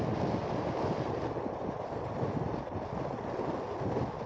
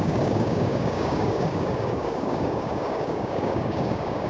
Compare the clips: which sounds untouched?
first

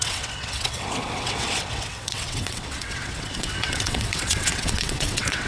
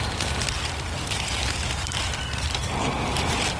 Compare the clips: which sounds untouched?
second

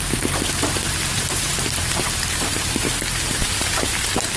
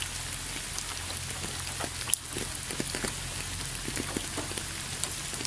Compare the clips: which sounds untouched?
second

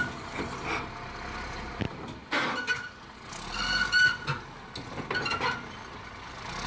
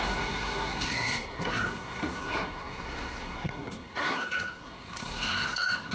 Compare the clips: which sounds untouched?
first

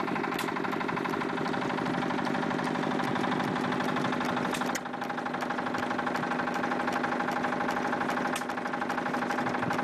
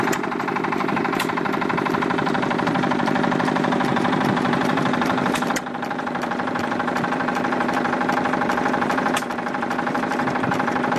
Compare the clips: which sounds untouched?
first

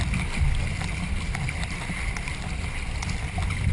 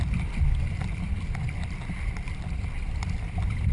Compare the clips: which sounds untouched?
first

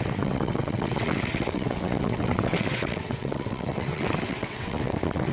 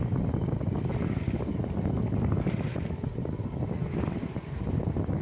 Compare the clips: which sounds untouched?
second